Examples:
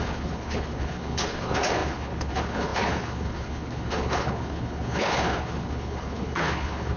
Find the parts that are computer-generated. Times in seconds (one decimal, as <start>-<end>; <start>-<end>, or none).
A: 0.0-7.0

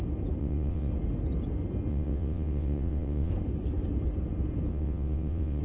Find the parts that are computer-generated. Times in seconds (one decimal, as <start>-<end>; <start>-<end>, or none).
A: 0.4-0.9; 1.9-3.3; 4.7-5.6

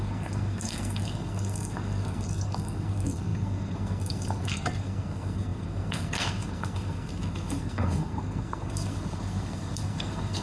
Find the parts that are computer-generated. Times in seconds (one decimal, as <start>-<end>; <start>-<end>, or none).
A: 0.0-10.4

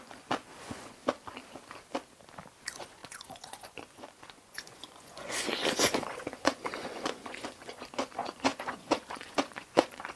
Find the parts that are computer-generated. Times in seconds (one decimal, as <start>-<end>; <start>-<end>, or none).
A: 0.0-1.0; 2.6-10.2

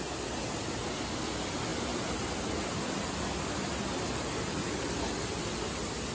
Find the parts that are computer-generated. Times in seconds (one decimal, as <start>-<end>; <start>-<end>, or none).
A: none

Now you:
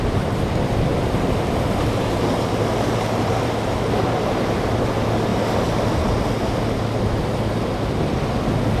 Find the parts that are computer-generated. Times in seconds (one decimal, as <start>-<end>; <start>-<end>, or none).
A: 0.9-4.8